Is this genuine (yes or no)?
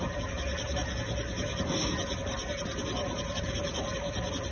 yes